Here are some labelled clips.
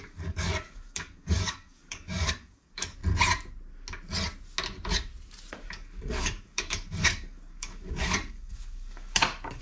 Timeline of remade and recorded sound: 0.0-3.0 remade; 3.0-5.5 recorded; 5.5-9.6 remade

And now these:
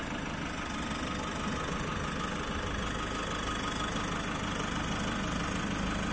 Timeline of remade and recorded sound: 0.0-6.1 recorded

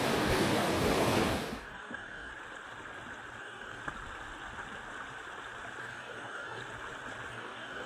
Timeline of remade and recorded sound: 0.0-2.3 remade; 2.3-3.4 recorded; 3.4-3.8 remade; 3.8-5.8 recorded; 5.8-6.6 remade; 6.6-7.3 recorded; 7.3-7.9 remade

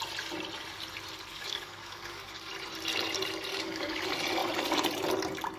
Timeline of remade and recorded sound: 0.0-1.3 recorded; 1.3-2.5 remade; 2.5-3.5 recorded; 3.5-4.0 remade; 4.0-5.6 recorded

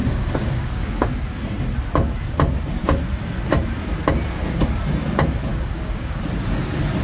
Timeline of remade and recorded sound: 0.0-1.0 remade; 1.0-5.5 recorded; 5.5-6.2 remade; 6.2-7.0 recorded

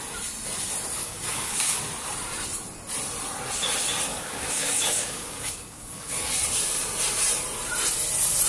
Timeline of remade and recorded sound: 0.0-1.0 recorded; 1.0-1.8 remade; 1.8-4.1 recorded; 4.1-6.3 remade; 6.3-8.5 recorded

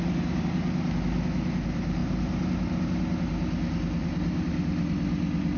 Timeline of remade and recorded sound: 0.0-5.6 recorded